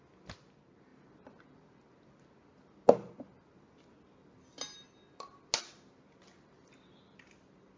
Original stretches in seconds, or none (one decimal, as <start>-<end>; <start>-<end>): 0.0-7.8